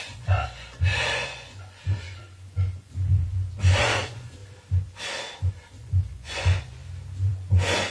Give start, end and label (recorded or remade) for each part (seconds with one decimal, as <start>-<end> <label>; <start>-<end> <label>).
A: 0.0-4.4 remade; 4.4-5.5 recorded; 5.5-6.8 remade; 6.8-7.3 recorded; 7.3-7.9 remade